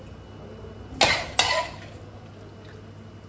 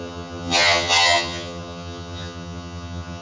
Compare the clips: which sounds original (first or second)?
first